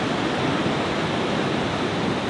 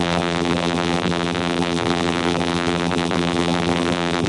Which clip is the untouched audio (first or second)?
first